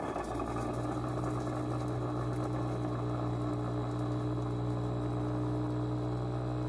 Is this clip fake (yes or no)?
no